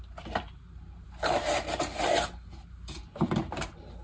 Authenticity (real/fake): real